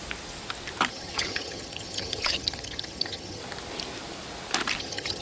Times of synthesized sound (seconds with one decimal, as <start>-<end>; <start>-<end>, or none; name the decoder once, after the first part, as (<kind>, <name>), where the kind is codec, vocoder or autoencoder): 0.9-3.4 (vocoder, HiFi-GAN); 4.8-5.2